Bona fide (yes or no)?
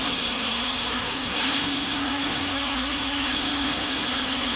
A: no